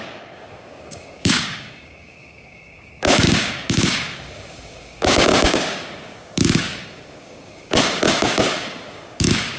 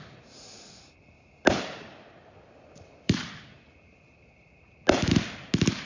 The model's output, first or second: first